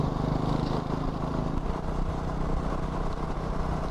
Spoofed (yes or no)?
no